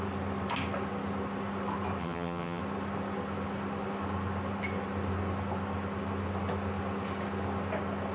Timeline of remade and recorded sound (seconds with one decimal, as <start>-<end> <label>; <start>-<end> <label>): 0.0-2.0 recorded; 2.0-2.6 remade; 2.6-8.1 recorded